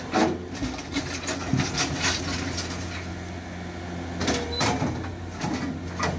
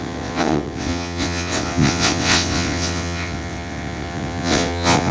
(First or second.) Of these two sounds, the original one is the first